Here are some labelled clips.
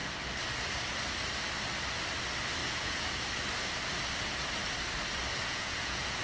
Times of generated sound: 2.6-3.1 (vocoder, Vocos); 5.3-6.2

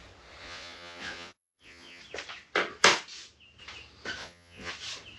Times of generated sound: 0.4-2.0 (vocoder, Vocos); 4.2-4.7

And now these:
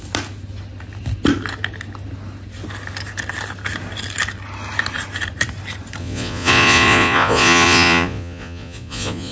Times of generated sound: 6.0-9.3 (vocoder, Vocos)

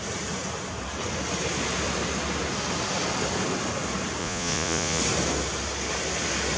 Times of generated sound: 4.2-5.0 (vocoder, Vocos)

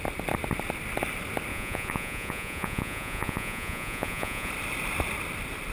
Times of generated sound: 1.5-4.5 (vocoder, Vocos)

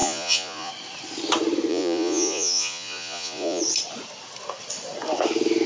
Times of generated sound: 0.0-0.7 (vocoder, Vocos); 1.7-3.6